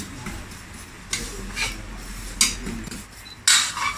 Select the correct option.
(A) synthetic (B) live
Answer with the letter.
B